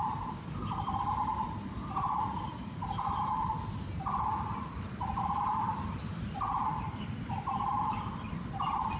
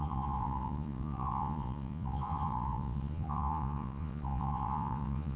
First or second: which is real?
first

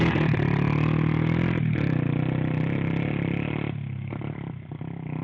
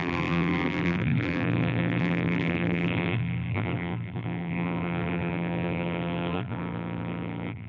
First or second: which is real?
first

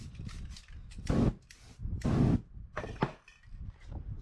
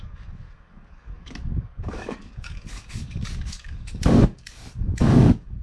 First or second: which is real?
first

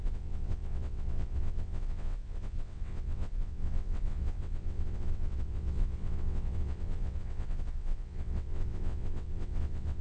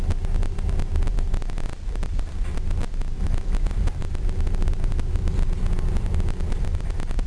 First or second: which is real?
second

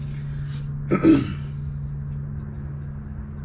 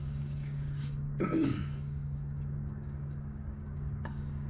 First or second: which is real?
first